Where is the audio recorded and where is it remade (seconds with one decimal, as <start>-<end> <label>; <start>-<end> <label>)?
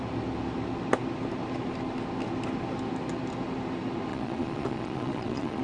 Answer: 0.0-4.1 recorded; 4.1-5.6 remade